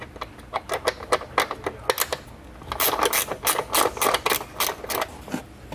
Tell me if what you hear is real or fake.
real